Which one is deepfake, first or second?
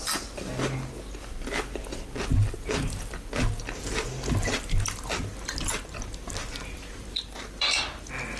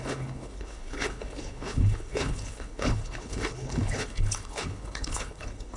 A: second